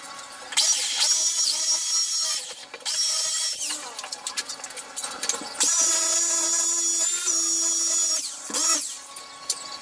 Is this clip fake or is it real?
real